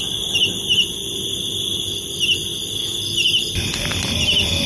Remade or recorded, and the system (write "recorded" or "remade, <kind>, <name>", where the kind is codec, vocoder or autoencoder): recorded